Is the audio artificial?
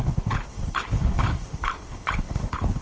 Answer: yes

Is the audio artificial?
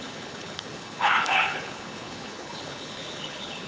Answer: yes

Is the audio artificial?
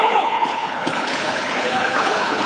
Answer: yes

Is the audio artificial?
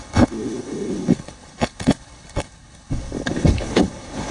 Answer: yes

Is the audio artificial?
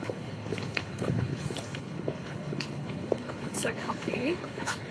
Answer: yes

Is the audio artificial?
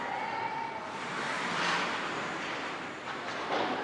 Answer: no